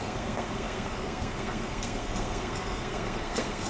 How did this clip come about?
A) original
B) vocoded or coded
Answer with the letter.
B